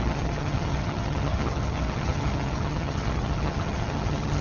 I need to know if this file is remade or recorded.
remade